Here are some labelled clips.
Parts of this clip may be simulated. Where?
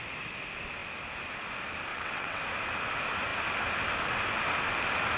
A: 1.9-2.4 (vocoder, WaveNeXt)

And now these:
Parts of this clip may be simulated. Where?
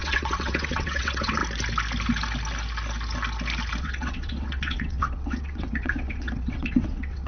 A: 0.0-1.4 (vocoder, WaveNeXt); 3.8-7.3